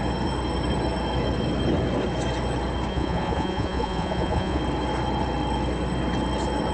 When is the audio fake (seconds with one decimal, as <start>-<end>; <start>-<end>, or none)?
2.9-4.6